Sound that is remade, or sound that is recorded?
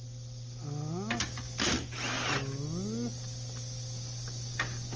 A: recorded